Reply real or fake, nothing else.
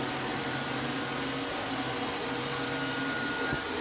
real